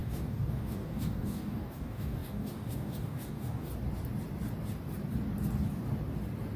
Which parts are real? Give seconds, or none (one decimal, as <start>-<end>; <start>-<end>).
3.7-6.6